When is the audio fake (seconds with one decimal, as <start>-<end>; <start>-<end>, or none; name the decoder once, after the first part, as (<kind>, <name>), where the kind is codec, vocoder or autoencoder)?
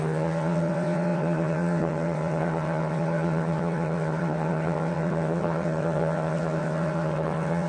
0.0-7.7 (vocoder, WaveNeXt)